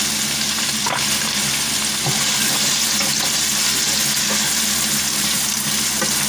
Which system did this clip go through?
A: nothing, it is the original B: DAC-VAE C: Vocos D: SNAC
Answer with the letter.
A